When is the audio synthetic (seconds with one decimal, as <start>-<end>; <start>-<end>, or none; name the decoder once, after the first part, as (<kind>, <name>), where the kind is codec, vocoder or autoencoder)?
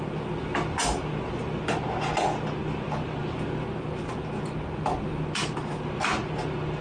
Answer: none